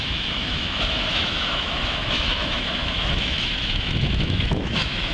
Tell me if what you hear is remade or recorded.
remade